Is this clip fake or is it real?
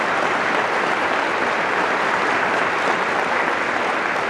real